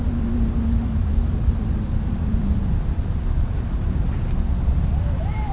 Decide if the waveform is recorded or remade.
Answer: remade